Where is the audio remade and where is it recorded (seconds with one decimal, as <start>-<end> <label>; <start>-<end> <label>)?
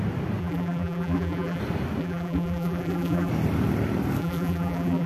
0.0-0.4 recorded; 0.4-1.6 remade; 1.6-2.0 recorded; 2.0-3.3 remade; 3.3-4.2 recorded; 4.2-5.1 remade